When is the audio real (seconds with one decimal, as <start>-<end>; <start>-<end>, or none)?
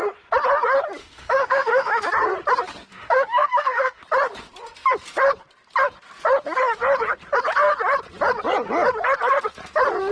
0.0-1.0; 2.1-2.9; 4.0-10.1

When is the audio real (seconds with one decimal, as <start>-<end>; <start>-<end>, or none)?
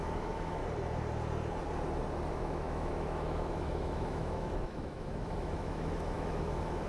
0.6-2.3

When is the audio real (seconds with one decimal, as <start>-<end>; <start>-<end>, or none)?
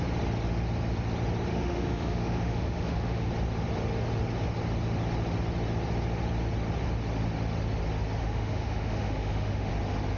0.0-1.5; 3.3-8.2; 9.7-10.2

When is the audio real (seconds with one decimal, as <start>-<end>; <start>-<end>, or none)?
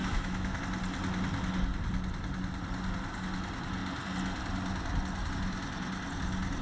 0.6-6.6